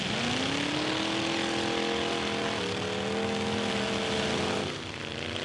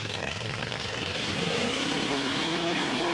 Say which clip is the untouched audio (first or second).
first